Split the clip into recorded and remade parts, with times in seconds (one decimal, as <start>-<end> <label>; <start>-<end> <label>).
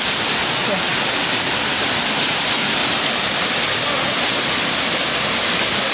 0.0-5.9 recorded